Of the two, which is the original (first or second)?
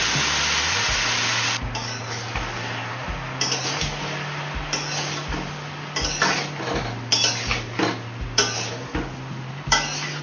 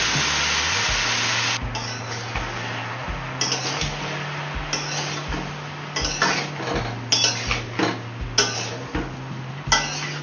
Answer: second